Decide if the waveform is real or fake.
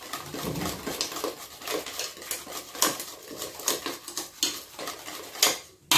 real